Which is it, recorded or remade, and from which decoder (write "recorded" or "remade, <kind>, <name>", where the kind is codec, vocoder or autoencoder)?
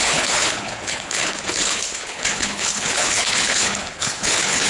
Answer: remade, codec, HILCodec